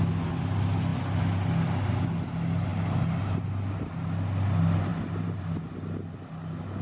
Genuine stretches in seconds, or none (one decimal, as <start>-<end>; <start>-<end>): 0.0-4.9; 5.4-6.8